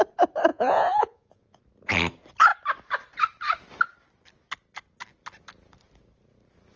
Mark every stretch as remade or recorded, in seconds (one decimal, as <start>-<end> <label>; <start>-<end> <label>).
0.0-0.5 recorded; 0.5-1.6 remade; 1.6-6.8 recorded